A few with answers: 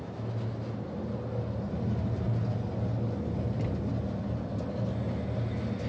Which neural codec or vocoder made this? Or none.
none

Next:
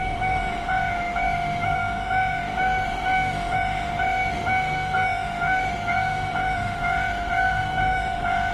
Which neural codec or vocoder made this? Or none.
autoencoder, DAC-VAE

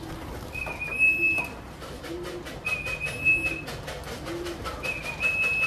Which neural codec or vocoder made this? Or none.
none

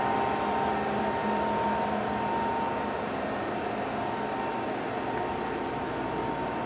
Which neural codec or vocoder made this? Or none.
none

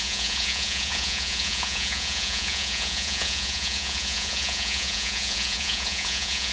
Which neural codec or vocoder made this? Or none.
vocoder, Vocos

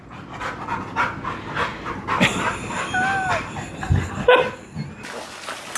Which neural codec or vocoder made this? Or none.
none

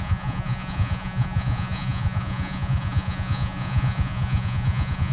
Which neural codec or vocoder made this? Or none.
vocoder, Vocos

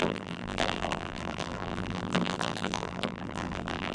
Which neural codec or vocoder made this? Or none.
vocoder, BigVGAN v2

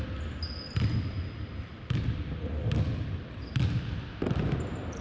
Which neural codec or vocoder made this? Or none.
none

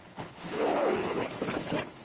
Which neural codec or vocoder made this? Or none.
codec, HILCodec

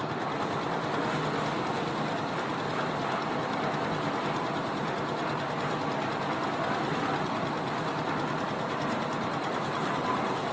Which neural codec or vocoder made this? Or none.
none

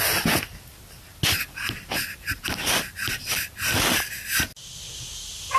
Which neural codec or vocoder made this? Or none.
none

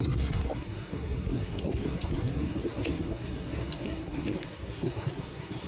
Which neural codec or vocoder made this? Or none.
codec, SNAC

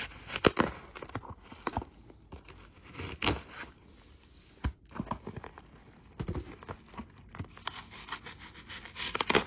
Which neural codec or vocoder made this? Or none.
none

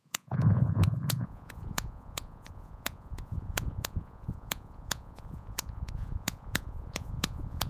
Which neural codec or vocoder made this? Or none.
vocoder, Vocos